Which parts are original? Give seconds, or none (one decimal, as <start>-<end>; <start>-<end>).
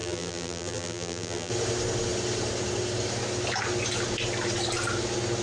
1.5-5.4